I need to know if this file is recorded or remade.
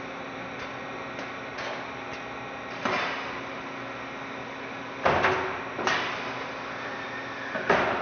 recorded